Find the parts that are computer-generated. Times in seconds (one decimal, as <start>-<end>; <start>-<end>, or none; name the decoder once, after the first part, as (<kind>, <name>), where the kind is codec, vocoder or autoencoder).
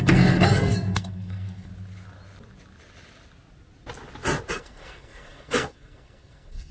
0.0-1.7 (codec, SNAC); 4.5-6.7